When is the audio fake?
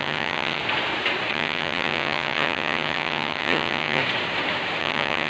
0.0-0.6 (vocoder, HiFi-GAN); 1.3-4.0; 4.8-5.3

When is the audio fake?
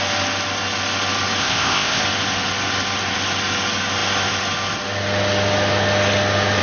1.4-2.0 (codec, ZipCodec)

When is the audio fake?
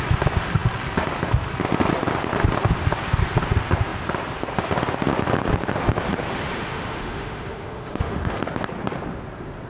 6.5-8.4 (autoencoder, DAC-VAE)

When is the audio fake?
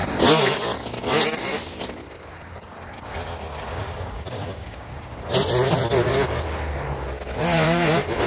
3.8-5.1 (codec, DAC)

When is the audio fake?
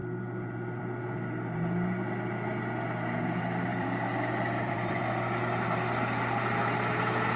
3.7-5.0 (vocoder, BigVGAN v2)